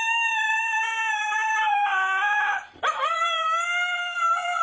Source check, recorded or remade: remade